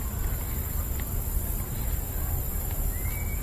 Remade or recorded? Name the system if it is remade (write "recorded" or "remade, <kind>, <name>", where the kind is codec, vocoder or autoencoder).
recorded